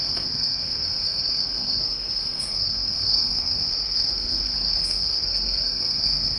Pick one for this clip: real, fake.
fake